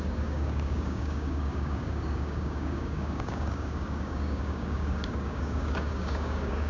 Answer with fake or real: fake